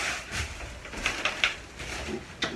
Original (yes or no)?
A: yes